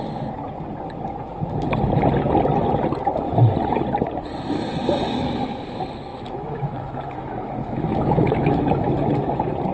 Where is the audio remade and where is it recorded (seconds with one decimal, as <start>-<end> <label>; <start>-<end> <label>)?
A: 0.0-6.1 recorded; 6.1-8.6 remade; 8.6-9.7 recorded